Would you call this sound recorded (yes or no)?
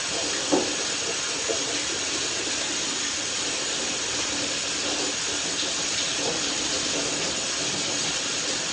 yes